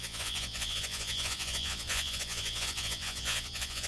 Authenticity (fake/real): fake